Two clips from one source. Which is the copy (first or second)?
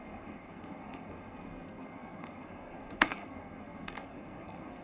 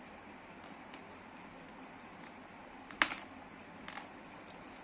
first